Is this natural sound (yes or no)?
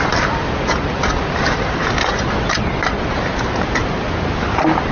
yes